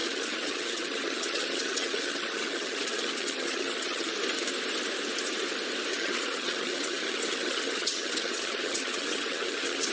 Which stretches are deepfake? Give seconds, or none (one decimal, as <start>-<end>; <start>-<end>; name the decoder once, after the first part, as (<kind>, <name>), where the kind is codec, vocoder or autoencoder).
0.0-4.1 (vocoder, HiFi-GAN); 5.9-9.9